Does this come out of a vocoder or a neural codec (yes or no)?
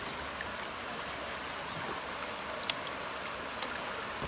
no